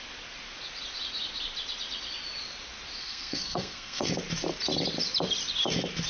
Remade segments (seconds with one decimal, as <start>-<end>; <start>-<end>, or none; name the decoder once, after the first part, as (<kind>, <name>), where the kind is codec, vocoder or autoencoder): 3.0-4.1 (codec, SNAC)